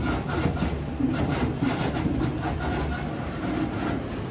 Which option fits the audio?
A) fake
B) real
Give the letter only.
B